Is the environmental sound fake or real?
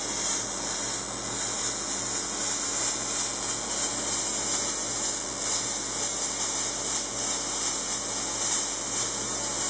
real